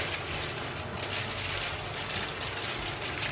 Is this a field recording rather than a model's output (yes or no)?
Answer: yes